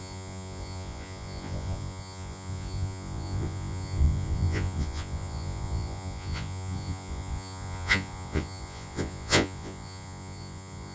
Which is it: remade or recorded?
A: remade